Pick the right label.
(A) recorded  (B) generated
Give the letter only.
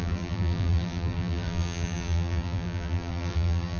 B